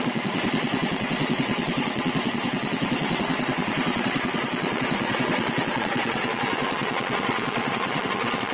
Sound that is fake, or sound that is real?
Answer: fake